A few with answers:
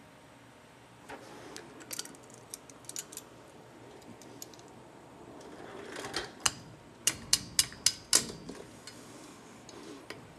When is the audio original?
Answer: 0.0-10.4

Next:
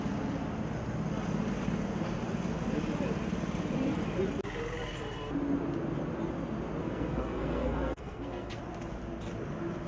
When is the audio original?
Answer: 0.0-6.8; 8.6-9.9

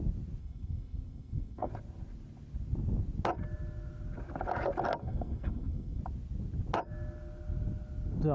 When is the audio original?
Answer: 0.0-0.4; 1.7-5.0; 6.0-8.3

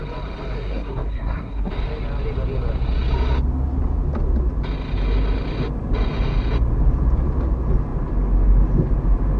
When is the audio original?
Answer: 0.0-0.6; 1.7-9.4

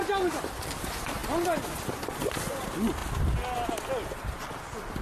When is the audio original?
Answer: 0.0-5.0

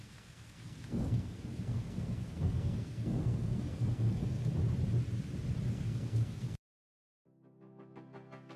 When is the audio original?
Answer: 4.5-5.7

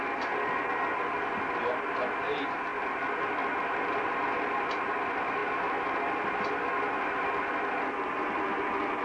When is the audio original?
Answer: 0.0-9.0